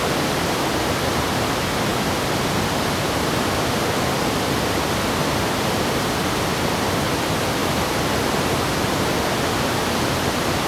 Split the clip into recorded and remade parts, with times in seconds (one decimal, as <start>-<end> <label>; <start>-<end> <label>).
0.0-10.7 recorded